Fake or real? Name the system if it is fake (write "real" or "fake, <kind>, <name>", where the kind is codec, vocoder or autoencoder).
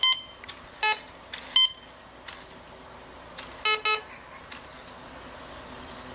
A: real